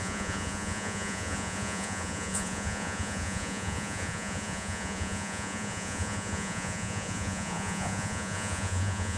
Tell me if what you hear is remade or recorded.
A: remade